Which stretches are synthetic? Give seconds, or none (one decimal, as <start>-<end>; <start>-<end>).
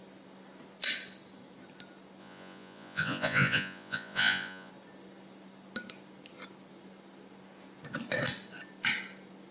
2.2-4.7